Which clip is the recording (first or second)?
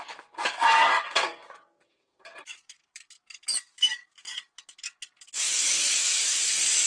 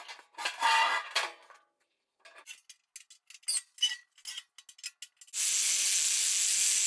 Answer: second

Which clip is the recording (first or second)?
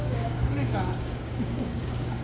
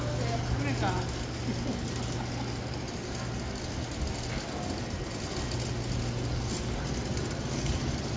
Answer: second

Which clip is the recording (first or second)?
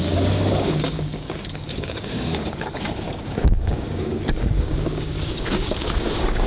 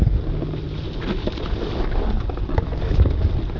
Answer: second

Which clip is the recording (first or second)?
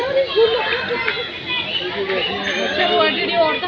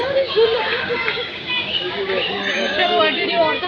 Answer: first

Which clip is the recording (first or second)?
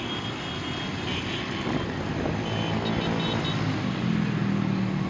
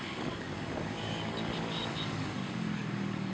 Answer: first